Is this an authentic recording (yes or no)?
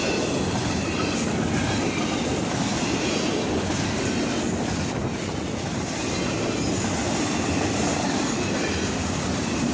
yes